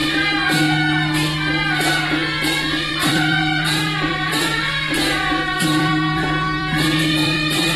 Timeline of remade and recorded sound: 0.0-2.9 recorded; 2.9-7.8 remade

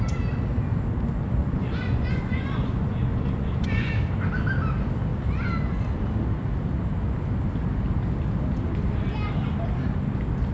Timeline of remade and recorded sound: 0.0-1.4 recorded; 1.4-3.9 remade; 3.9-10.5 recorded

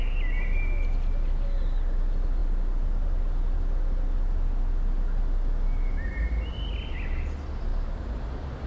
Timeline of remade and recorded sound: 0.0-8.7 recorded